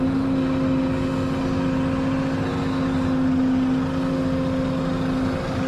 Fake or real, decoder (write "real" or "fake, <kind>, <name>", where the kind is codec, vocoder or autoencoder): real